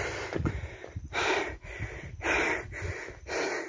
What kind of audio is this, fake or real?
real